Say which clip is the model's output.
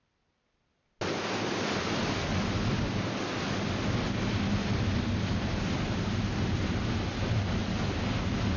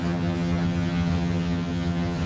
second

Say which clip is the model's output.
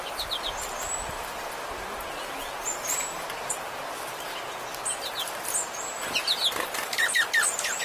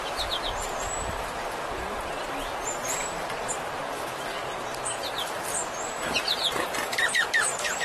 second